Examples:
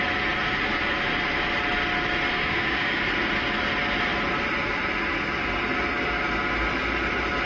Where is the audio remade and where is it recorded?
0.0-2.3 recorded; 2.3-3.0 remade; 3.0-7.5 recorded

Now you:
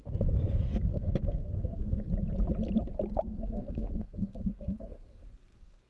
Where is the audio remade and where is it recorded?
0.0-0.9 recorded; 0.9-2.1 remade; 2.1-3.3 recorded; 3.3-5.9 remade

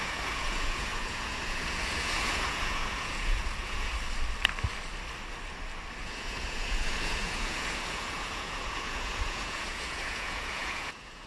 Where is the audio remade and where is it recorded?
0.0-3.9 remade; 3.9-6.0 recorded; 6.0-11.3 remade

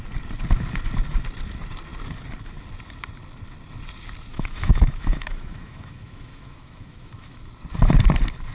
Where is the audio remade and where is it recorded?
0.0-4.3 recorded; 4.3-7.5 remade; 7.5-8.5 recorded

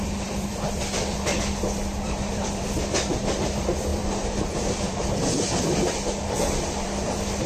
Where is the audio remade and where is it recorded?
0.0-7.5 remade